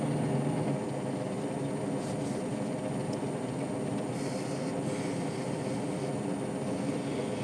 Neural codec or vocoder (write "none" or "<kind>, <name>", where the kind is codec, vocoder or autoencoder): none